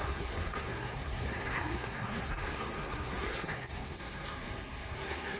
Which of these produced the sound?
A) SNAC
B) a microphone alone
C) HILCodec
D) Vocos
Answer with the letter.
A